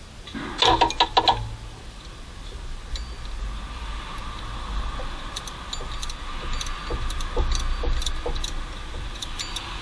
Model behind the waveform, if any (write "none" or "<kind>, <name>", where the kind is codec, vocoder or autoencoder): none